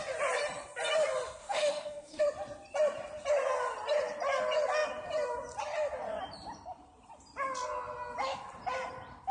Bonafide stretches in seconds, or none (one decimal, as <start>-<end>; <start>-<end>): 0.0-1.4; 2.2-9.3